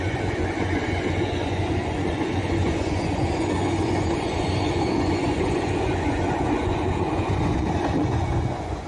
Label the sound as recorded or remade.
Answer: remade